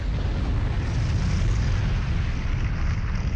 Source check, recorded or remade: recorded